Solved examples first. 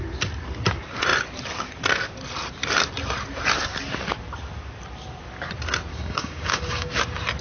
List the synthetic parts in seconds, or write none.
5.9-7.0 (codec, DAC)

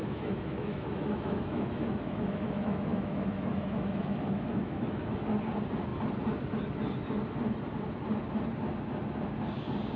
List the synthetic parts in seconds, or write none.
0.0-5.1 (autoencoder, DAC-VAE)

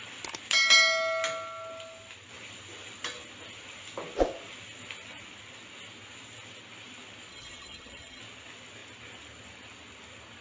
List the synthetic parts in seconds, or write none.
7.3-8.2 (vocoder, HiFi-GAN)

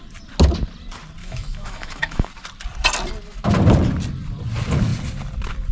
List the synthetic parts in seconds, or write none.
1.2-2.3 (autoencoder, DAC-VAE)

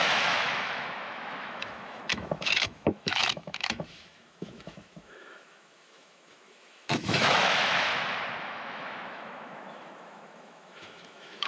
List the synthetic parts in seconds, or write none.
0.0-7.9 (autoencoder, DAC-VAE); 8.4-11.5

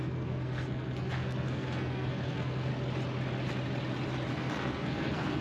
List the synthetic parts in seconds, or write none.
0.0-2.7 (codec, SNAC); 4.3-5.4